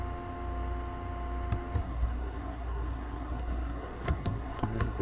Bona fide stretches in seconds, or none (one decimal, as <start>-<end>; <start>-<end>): 0.0-1.8